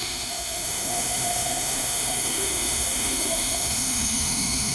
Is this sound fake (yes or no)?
yes